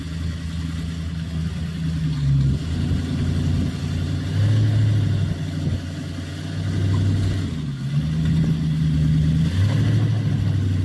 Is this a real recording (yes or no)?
yes